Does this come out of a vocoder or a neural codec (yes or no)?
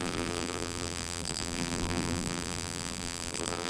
yes